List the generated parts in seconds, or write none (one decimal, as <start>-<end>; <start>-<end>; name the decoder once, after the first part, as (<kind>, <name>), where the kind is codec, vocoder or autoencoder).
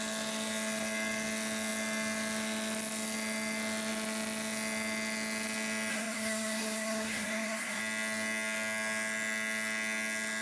5.9-7.8 (codec, SNAC)